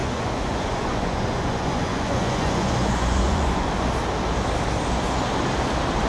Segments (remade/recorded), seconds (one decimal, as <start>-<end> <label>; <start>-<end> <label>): 0.0-3.7 remade; 3.7-6.1 recorded